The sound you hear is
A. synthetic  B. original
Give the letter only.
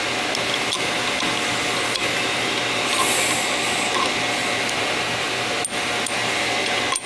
B